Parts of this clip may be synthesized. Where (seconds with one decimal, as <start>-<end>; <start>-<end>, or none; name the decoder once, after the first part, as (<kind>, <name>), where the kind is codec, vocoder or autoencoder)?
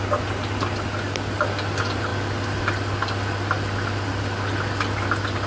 none